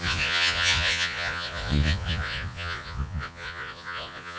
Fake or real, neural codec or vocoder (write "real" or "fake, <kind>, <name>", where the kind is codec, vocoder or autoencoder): fake, vocoder, Vocos